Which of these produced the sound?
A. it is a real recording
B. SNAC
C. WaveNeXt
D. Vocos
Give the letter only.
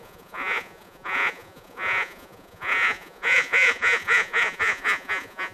D